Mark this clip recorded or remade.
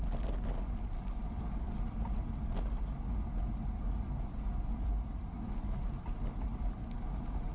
recorded